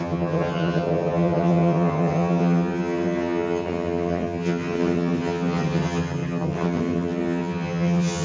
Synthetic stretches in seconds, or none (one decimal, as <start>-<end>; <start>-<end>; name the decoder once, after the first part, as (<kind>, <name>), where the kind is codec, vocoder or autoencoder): 0.0-8.2 (vocoder, HiFi-GAN)